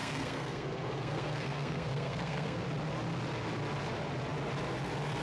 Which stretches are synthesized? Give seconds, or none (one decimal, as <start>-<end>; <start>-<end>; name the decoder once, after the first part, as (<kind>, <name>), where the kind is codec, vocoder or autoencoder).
0.0-2.6 (codec, SNAC)